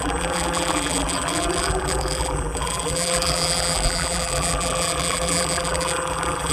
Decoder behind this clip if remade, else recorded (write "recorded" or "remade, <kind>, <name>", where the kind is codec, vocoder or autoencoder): remade, vocoder, BigVGAN v2